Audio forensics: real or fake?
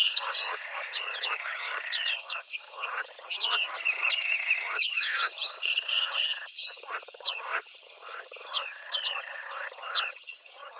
fake